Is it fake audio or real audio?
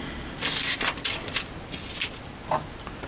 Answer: real